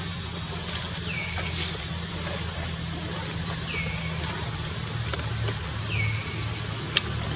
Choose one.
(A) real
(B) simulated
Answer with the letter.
A